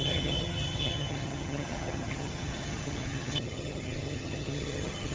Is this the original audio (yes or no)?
no